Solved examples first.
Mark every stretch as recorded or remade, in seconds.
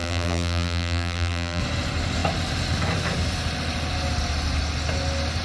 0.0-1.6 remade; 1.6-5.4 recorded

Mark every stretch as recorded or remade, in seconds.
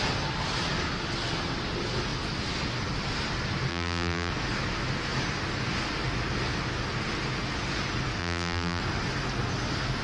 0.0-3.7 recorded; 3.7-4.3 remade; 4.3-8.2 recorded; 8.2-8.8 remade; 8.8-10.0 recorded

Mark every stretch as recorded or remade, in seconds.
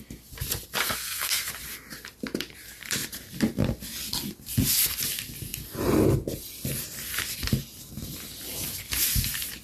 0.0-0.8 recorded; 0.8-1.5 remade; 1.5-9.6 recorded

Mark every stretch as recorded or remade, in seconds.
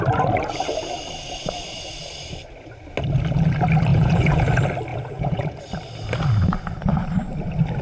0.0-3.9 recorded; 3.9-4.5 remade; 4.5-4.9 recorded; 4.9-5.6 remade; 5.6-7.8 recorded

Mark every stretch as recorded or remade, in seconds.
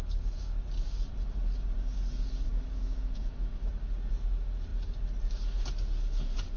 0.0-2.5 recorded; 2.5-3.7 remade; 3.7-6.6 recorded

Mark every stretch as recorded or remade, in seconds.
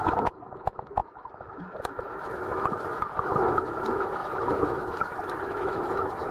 0.0-6.3 remade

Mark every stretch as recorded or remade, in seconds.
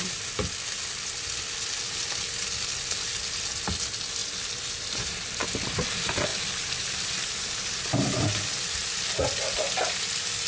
0.0-4.2 recorded; 4.2-5.4 remade; 5.4-6.3 recorded; 6.3-8.4 remade; 8.4-10.5 recorded